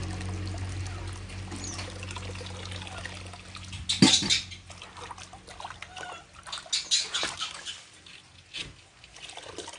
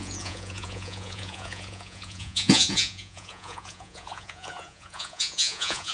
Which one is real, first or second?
first